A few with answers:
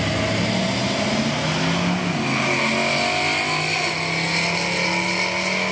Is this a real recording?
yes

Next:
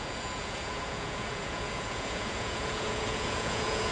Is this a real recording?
no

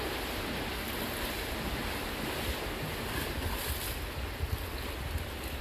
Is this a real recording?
yes